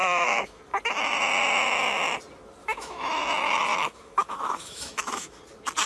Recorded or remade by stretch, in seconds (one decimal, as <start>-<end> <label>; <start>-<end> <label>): 0.0-0.6 remade; 0.6-2.6 recorded; 2.6-3.2 remade; 3.2-3.7 recorded; 3.7-5.4 remade; 5.4-5.9 recorded